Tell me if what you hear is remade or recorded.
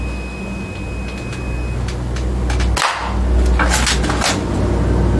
recorded